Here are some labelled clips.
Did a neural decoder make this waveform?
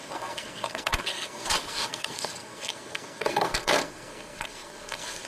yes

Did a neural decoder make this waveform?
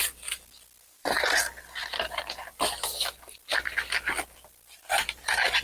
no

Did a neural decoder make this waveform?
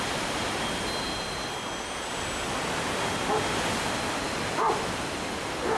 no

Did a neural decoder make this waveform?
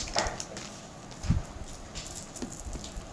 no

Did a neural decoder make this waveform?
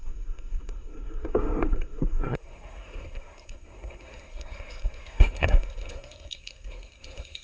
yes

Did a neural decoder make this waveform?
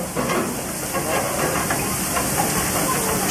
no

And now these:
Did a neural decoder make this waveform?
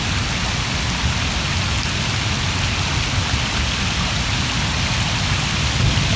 no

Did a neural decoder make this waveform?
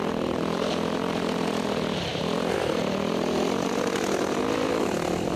no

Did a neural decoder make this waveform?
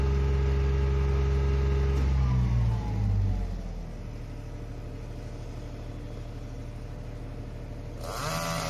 no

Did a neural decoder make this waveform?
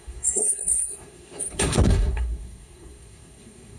yes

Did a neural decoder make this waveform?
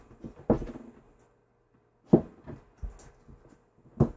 no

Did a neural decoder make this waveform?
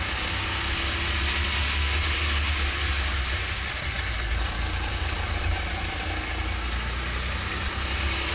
no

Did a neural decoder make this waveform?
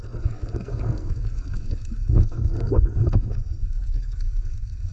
yes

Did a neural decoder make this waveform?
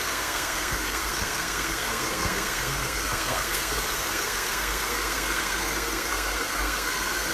yes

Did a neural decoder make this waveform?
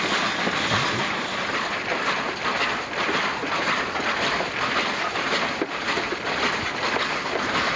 no